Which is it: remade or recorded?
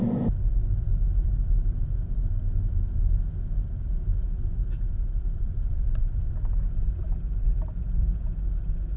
remade